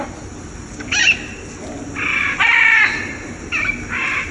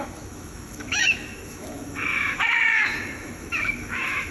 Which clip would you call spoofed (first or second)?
second